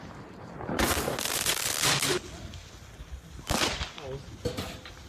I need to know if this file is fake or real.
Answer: real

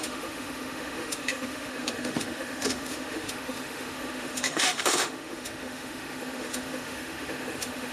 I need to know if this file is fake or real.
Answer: fake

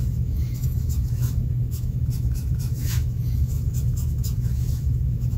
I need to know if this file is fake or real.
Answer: fake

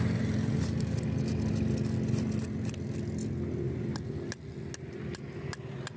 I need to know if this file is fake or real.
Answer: real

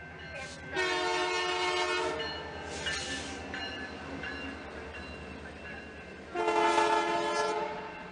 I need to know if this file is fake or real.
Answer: real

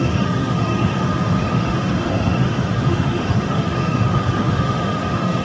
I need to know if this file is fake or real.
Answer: fake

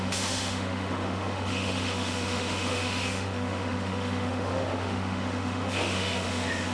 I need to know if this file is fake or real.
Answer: fake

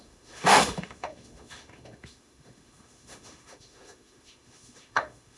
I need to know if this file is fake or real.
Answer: fake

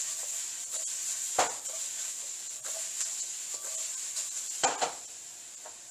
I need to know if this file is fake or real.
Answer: real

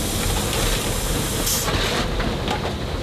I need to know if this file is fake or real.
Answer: real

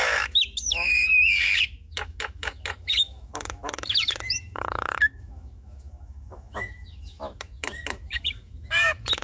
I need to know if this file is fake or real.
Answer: fake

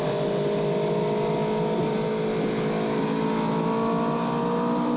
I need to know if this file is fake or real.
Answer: real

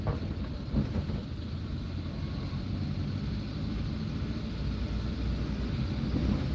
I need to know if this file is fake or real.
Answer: real